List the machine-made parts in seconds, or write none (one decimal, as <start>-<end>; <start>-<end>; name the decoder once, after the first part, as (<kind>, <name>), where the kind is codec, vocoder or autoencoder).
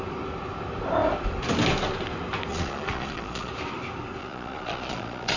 2.5-3.5 (vocoder, Vocos); 4.2-5.4